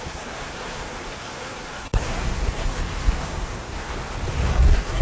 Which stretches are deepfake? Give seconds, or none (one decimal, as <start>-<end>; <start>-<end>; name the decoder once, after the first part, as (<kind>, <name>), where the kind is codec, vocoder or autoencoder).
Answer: 0.0-3.9 (codec, SNAC); 4.5-5.0